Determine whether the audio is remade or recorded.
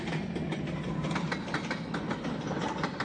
recorded